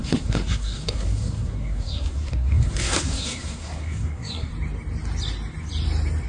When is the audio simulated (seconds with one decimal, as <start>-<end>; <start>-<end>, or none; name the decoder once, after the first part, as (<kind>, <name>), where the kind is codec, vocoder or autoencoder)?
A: 0.0-4.5 (codec, SNAC)

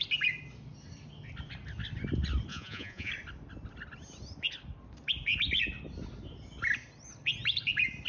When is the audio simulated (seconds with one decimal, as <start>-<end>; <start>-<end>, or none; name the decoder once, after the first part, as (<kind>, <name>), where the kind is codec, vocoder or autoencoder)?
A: 2.5-3.1 (vocoder, Vocos)

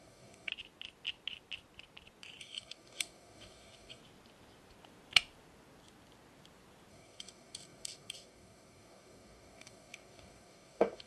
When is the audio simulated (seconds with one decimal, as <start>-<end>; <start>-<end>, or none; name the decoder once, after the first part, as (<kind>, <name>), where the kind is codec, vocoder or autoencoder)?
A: 0.0-0.5 (codec, DAC); 2.4-4.0; 6.9-11.1

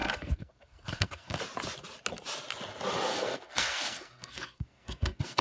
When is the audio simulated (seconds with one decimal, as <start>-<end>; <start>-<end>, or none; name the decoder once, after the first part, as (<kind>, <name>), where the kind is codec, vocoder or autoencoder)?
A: 0.0-1.4 (codec, SNAC); 3.1-5.4

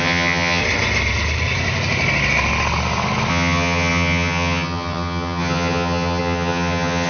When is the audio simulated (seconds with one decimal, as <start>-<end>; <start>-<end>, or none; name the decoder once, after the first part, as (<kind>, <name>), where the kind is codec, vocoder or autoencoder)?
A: 0.0-0.6 (vocoder, HiFi-GAN); 3.3-7.1

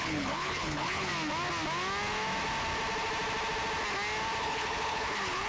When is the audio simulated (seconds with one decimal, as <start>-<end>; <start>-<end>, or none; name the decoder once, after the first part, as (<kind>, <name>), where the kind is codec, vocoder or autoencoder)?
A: 0.0-1.1 (codec, HILCodec); 4.4-5.5

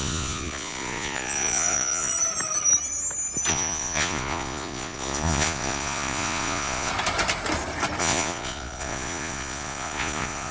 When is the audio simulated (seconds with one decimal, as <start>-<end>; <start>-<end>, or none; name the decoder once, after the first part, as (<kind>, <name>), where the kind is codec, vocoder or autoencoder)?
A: 0.0-2.1 (vocoder, Vocos); 3.5-6.9; 8.0-10.5